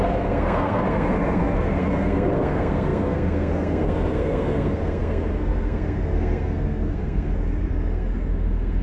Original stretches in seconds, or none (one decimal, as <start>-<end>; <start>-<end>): none